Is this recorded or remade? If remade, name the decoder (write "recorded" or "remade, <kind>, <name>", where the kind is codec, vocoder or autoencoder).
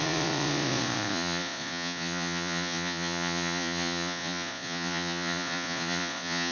remade, vocoder, Vocos